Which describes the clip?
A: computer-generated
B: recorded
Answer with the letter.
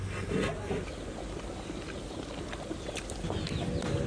B